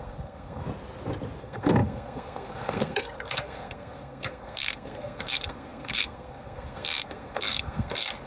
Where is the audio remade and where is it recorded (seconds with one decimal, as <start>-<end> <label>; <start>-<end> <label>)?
0.0-0.6 remade; 0.6-1.4 recorded; 1.4-8.3 remade